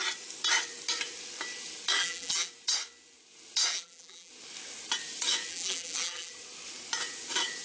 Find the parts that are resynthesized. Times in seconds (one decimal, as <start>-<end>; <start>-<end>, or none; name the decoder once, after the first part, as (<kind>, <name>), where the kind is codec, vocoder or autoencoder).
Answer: 2.0-2.5 (vocoder, BigVGAN v2); 3.7-4.3; 5.5-6.3